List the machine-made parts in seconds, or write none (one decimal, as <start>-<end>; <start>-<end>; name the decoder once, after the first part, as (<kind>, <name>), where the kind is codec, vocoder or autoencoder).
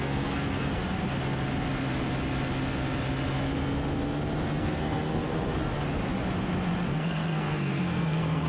0.0-0.8 (codec, SNAC); 4.6-5.3; 6.9-8.5